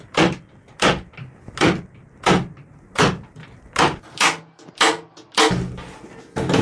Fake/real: real